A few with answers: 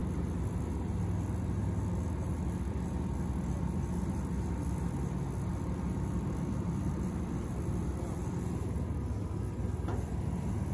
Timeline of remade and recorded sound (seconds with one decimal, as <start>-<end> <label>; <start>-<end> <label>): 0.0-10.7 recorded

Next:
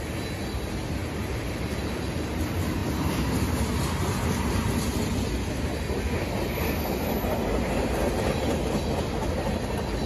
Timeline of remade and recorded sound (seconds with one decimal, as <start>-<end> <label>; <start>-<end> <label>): 0.0-1.0 recorded; 1.0-2.4 remade; 2.4-10.1 recorded

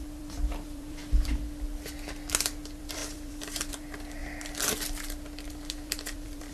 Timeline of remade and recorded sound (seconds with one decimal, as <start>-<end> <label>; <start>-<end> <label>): 0.0-1.0 remade; 1.0-2.6 recorded; 2.6-4.2 remade; 4.2-5.5 recorded; 5.5-6.5 remade

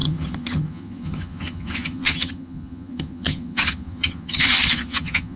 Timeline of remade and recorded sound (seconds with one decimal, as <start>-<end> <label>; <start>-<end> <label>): 0.0-5.4 remade

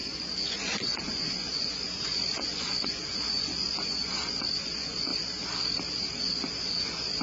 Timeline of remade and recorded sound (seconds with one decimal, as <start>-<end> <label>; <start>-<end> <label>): 0.0-5.1 remade; 5.1-6.2 recorded; 6.2-7.2 remade

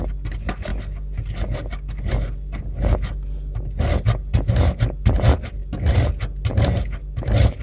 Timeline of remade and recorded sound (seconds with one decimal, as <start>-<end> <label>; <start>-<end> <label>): 0.0-7.6 recorded

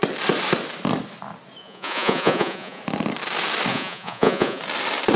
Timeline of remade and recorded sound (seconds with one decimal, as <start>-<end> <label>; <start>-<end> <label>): 0.0-1.6 recorded; 1.6-2.8 remade; 2.8-3.7 recorded; 3.7-4.6 remade; 4.6-5.2 recorded